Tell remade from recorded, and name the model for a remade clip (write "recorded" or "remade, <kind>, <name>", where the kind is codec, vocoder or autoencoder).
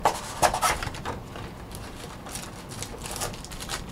recorded